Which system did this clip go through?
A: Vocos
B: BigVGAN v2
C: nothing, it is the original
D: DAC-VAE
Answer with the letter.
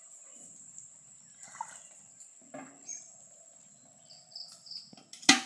C